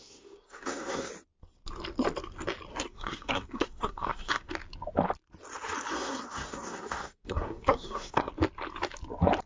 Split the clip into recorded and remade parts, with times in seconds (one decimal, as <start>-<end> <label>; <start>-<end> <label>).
0.0-1.1 remade; 1.1-2.7 recorded; 2.7-4.5 remade; 4.5-5.9 recorded; 5.9-8.3 remade; 8.3-9.5 recorded